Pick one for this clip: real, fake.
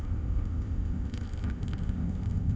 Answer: fake